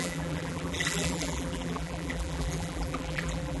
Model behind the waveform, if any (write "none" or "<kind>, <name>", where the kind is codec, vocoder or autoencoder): vocoder, BigVGAN v2